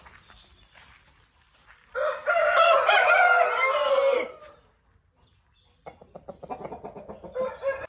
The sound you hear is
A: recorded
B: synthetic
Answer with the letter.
A